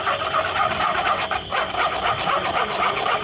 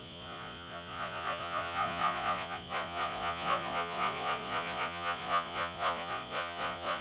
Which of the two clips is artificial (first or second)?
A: second